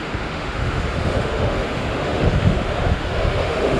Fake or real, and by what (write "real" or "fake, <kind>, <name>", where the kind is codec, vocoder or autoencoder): fake, autoencoder, DAC-VAE